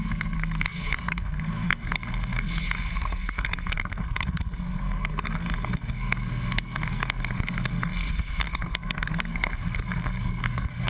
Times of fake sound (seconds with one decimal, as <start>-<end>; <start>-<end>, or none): 0.0-10.9